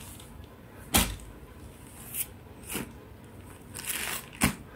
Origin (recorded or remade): recorded